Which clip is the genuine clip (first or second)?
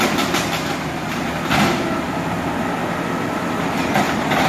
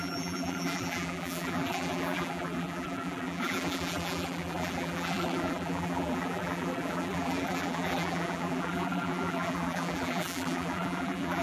first